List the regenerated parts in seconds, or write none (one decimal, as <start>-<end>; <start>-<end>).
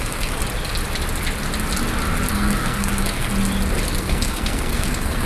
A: 0.0-0.4; 2.3-3.3; 4.0-5.3